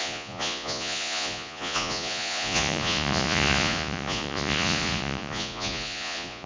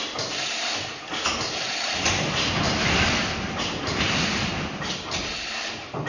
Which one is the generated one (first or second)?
first